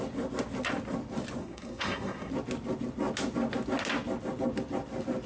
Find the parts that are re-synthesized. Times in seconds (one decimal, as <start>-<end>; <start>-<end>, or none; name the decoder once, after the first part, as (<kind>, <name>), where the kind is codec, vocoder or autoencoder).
1.4-2.3 (codec, SNAC)